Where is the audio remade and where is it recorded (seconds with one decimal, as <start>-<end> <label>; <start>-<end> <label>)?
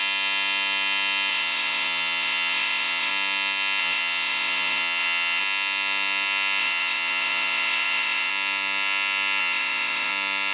0.0-1.3 recorded; 1.3-3.1 remade; 3.1-3.8 recorded; 3.8-5.4 remade; 5.4-6.6 recorded; 6.6-8.3 remade; 8.3-9.4 recorded; 9.4-10.1 remade; 10.1-10.5 recorded